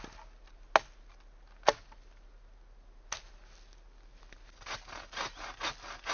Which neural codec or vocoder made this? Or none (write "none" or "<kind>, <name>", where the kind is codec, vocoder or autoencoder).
none